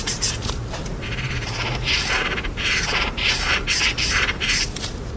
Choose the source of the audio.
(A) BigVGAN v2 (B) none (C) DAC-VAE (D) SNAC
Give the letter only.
B